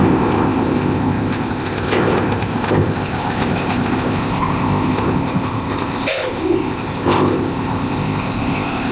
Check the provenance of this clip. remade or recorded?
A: remade